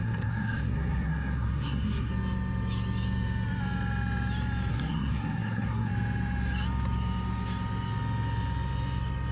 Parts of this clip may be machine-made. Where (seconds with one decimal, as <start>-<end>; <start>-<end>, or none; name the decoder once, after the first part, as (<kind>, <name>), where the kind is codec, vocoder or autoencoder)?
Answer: 0.0-2.1 (codec, SNAC); 4.7-5.9